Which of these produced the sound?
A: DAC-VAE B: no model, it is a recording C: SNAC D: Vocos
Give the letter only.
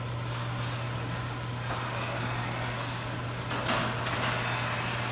B